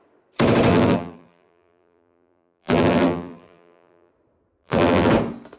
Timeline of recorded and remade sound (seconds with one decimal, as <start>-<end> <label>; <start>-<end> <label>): 0.0-0.7 recorded; 0.7-4.1 remade; 4.1-4.6 recorded; 4.6-5.1 remade; 5.1-5.6 recorded